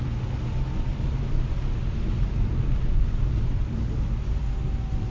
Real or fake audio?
real